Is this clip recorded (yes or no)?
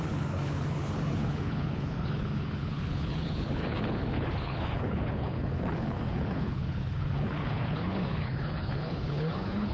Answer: no